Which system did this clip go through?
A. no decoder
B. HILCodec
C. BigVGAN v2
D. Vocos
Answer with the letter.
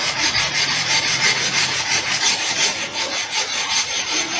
D